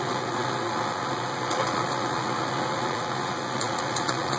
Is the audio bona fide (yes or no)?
no